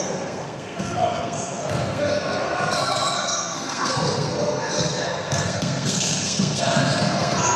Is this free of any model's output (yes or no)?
no